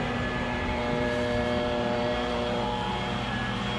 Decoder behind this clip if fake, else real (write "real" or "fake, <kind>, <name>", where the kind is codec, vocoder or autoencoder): fake, vocoder, BigVGAN v2